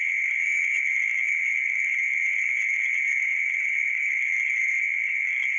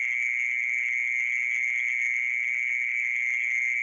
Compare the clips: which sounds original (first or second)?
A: second